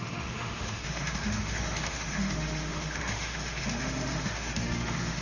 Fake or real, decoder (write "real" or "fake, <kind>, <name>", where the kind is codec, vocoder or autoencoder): fake, autoencoder, DAC-VAE